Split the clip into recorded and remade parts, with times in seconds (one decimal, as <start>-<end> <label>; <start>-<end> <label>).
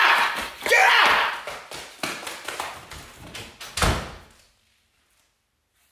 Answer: 0.0-0.8 remade; 0.8-1.7 recorded; 1.7-2.2 remade; 2.2-5.9 recorded